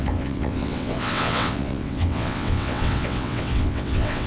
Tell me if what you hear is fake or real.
fake